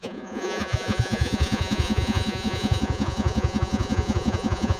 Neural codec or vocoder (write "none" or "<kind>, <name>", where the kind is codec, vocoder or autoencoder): vocoder, Vocos